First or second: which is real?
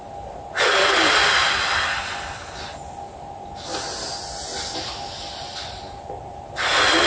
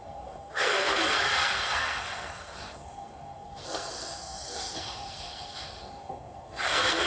first